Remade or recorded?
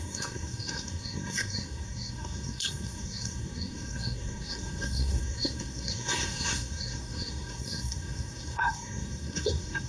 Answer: remade